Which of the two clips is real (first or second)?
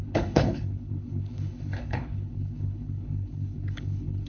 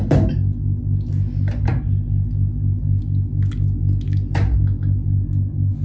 second